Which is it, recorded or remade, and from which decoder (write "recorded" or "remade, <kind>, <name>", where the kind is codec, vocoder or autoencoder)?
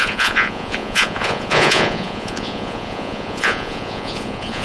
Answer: remade, vocoder, Vocos